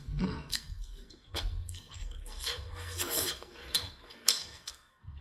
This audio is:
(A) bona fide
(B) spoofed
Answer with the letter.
B